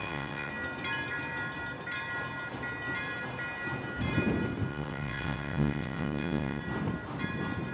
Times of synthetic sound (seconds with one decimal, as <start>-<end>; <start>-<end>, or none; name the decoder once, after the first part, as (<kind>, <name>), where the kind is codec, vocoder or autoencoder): 0.0-0.5 (vocoder, WaveNeXt); 4.7-6.6